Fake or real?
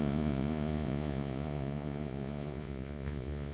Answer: fake